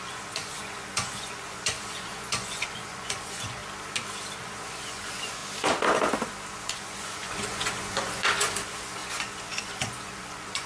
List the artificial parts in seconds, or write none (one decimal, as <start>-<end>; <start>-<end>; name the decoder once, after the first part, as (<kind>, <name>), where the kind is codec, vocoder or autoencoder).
0.0-3.6 (vocoder, Vocos); 4.4-5.4; 6.5-10.7